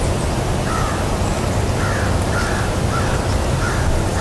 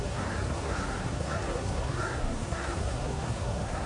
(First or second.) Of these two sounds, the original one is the first